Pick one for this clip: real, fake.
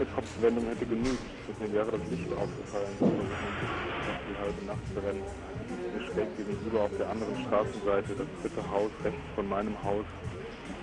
real